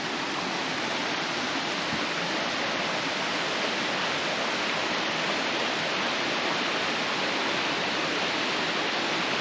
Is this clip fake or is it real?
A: real